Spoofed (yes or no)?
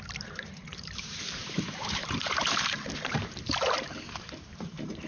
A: yes